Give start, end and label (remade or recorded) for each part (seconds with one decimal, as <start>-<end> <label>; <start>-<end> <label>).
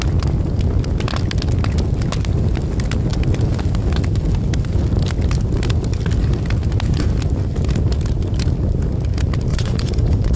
0.0-9.5 recorded; 9.5-10.4 remade